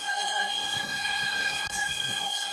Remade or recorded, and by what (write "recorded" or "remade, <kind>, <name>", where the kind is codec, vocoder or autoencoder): remade, codec, SNAC